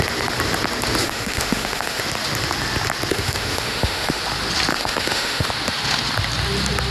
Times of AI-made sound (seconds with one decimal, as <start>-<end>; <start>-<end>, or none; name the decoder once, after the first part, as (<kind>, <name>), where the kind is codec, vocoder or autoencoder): 1.0-2.0 (autoencoder, DAC-VAE); 3.1-4.2; 4.7-5.5